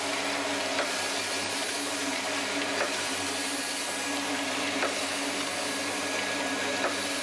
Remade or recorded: recorded